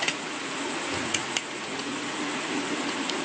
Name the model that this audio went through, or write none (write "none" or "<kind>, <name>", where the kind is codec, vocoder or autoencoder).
vocoder, Vocos